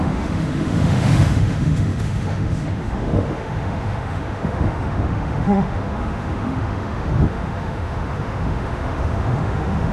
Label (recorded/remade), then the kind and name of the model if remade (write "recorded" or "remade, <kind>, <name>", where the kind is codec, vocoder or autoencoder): remade, autoencoder, DAC-VAE